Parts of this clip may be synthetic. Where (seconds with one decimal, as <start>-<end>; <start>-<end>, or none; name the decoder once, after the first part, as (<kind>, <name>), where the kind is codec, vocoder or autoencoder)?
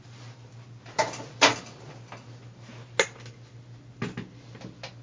none